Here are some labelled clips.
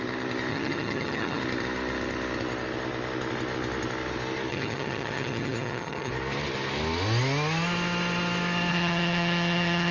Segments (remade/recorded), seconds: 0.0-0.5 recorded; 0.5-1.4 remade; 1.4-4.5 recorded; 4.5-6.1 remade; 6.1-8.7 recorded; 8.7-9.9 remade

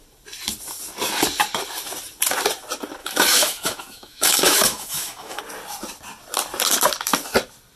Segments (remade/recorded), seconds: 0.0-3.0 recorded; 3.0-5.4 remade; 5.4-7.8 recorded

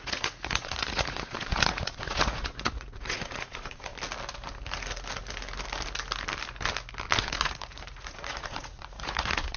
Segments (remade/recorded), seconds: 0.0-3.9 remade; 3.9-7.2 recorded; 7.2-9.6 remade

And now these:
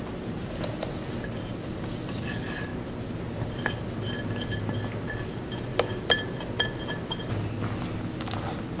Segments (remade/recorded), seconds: 0.0-8.8 recorded

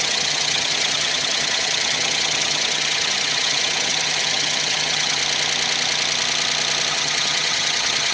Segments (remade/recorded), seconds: 0.0-5.2 remade; 5.2-6.9 recorded; 6.9-8.1 remade